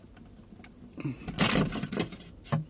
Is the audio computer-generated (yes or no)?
no